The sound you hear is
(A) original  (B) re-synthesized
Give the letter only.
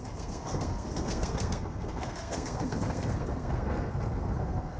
B